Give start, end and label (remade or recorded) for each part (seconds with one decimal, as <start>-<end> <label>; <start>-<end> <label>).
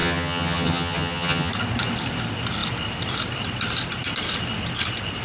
0.0-1.5 remade; 1.5-5.2 recorded